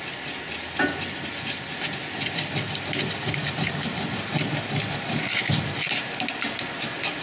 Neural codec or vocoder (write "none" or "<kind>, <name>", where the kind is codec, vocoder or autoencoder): none